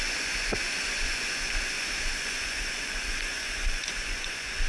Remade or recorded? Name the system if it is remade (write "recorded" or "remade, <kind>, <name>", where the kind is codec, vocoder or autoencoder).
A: remade, vocoder, Vocos